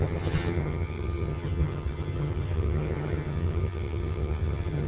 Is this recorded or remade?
remade